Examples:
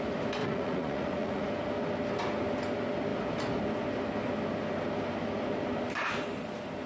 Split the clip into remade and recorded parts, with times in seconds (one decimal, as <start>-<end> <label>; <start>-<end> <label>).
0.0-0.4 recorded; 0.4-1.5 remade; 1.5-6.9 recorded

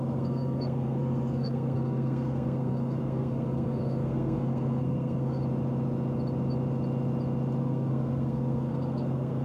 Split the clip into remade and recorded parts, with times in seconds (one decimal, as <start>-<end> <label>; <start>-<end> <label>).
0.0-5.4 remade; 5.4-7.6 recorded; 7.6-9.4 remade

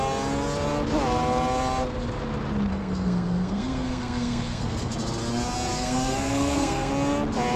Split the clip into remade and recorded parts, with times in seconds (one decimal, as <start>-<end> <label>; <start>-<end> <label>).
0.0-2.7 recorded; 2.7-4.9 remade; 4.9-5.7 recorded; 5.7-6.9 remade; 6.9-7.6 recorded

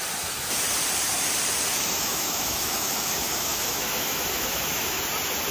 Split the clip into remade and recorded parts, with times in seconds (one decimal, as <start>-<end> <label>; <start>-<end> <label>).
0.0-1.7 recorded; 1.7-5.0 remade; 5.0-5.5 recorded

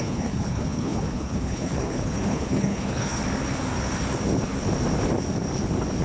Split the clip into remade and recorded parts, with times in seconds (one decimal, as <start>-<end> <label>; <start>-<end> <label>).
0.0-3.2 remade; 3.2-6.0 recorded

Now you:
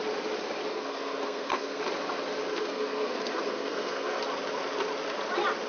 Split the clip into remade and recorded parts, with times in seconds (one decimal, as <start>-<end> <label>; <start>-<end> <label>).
0.0-0.7 recorded; 0.7-1.8 remade; 1.8-2.5 recorded; 2.5-4.2 remade; 4.2-5.7 recorded